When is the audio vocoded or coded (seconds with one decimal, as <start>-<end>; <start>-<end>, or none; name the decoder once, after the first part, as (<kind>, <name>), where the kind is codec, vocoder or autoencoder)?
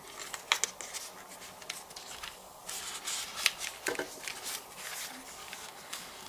2.0-2.6 (codec, DAC); 5.4-6.3